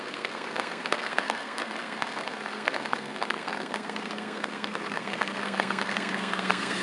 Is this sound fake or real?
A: fake